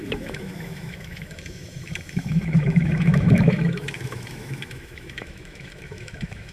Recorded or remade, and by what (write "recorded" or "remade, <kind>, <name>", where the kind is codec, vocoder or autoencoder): remade, autoencoder, DAC-VAE